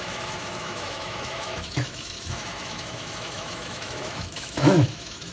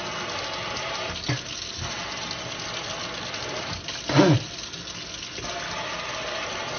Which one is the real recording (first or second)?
second